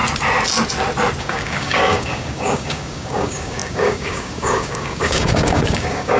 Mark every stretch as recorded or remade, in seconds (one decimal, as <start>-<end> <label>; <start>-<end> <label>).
0.0-1.2 recorded; 1.2-6.2 remade